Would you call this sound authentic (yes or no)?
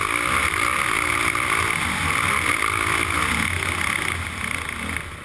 yes